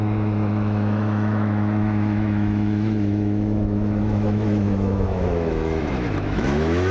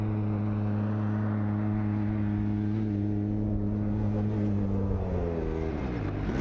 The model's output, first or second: first